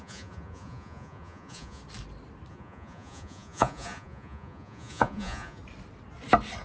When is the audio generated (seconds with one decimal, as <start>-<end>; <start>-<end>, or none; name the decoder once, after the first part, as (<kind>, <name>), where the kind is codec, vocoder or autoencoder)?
0.0-1.8 (vocoder, Vocos); 2.5-5.6